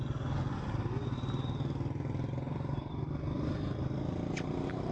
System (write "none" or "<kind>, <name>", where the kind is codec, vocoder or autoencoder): none